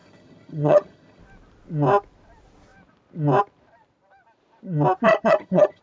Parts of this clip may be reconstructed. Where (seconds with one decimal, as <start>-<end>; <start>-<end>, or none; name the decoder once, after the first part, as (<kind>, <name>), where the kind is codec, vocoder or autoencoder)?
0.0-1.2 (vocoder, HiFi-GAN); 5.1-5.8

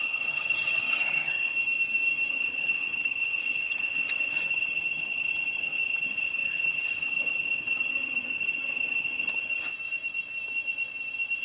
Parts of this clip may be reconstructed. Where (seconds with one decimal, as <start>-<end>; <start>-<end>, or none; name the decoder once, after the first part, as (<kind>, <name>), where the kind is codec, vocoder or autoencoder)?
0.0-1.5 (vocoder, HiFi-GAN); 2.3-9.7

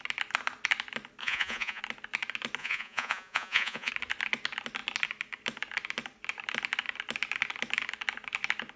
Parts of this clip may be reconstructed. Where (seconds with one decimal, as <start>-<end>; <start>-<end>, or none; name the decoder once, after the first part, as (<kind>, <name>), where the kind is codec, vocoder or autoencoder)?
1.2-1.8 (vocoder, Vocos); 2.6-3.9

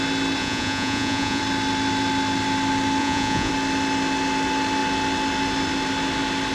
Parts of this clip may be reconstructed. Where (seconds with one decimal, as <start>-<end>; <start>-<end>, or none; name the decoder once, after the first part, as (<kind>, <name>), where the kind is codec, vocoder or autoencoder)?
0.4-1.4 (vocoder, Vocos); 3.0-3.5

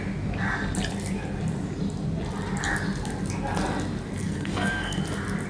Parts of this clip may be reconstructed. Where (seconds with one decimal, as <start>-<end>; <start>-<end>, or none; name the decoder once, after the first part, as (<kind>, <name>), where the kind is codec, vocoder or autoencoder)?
4.2-5.0 (codec, SNAC)

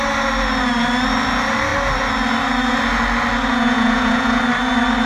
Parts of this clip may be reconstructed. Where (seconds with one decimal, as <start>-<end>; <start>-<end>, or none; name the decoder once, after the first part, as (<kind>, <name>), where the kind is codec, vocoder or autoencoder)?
3.5-4.4 (vocoder, Vocos)

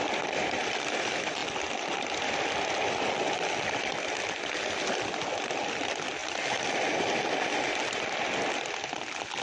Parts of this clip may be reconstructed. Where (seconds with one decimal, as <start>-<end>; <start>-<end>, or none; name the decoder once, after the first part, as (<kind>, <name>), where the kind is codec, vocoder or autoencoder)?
none